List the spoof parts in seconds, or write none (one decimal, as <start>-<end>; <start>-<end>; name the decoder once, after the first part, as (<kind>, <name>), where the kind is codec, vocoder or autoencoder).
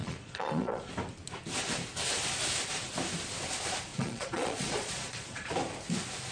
0.0-0.9 (vocoder, Vocos); 3.9-5.5